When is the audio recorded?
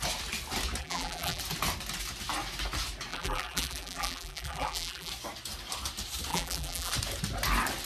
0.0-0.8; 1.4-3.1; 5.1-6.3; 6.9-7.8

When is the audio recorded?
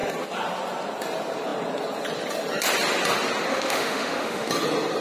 0.0-3.5; 4.5-5.0